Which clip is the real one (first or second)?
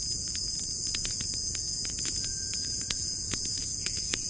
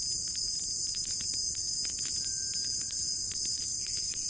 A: second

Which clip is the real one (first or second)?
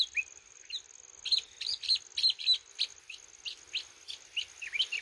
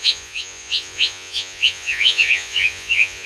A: first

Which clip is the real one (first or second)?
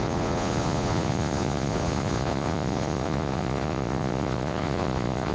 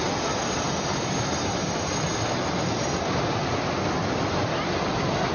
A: second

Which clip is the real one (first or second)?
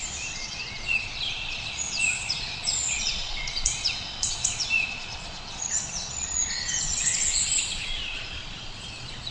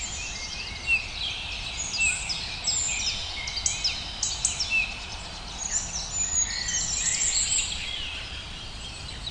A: second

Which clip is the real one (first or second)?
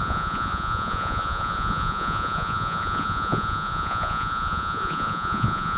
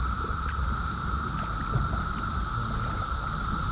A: second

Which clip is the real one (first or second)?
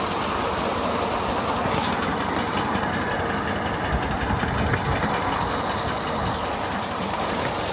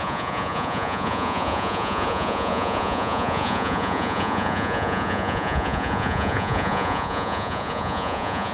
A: first